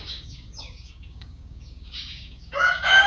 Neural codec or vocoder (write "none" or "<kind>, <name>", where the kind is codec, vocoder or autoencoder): codec, DAC